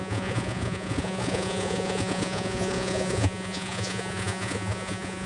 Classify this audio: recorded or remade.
remade